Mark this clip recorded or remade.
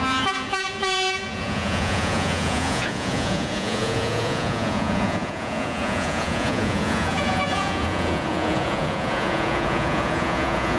remade